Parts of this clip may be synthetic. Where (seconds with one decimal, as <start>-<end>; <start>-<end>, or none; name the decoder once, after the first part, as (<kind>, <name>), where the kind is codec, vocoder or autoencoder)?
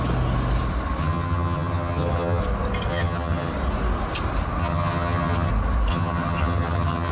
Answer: 1.0-2.4 (vocoder, HiFi-GAN); 2.9-3.5; 4.6-5.5; 5.9-7.1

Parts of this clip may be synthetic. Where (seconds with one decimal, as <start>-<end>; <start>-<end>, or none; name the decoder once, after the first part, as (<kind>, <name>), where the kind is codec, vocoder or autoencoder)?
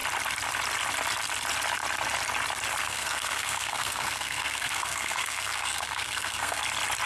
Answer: 2.8-6.6 (codec, SNAC)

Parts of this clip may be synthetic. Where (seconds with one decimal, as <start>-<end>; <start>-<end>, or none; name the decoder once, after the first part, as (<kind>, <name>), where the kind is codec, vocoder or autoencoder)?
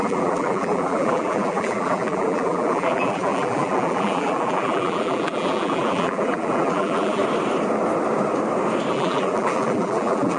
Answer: 0.0-7.2 (vocoder, BigVGAN v2); 8.9-10.4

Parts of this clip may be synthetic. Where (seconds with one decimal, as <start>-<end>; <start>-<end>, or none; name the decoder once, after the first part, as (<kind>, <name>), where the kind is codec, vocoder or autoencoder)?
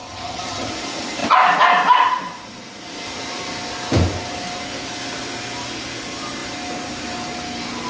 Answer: 0.0-0.7 (vocoder, HiFi-GAN)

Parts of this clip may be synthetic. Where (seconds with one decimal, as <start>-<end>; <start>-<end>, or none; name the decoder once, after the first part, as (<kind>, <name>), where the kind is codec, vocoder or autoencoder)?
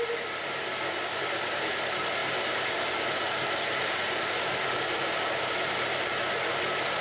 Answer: 2.2-6.4 (vocoder, BigVGAN v2)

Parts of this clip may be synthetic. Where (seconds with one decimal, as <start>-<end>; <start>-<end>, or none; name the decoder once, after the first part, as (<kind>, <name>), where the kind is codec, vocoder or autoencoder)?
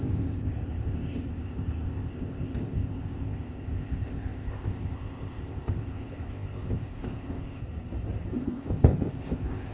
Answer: 0.0-7.6 (codec, ZipCodec); 8.4-9.7